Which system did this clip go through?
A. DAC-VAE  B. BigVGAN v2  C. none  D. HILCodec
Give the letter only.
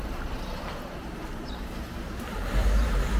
B